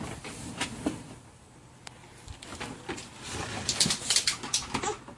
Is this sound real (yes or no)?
yes